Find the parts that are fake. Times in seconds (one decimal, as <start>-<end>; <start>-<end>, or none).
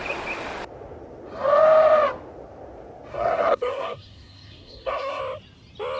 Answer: 3.1-5.2